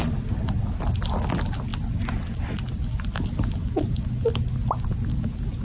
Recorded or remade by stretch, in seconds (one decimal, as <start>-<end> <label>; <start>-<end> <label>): 0.0-5.6 recorded